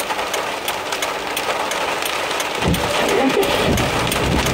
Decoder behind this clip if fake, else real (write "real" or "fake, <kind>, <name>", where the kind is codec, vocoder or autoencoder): real